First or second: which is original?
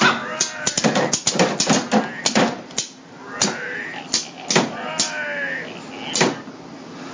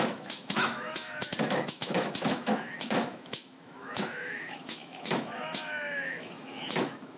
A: first